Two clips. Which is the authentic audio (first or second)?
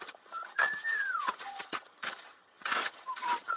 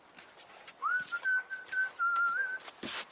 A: second